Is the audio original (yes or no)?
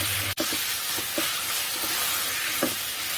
yes